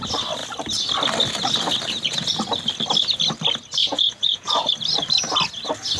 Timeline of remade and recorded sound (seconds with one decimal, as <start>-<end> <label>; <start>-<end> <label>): 0.0-3.8 recorded; 3.8-4.7 remade; 4.7-6.0 recorded